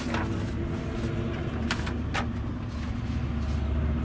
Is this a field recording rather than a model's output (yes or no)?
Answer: yes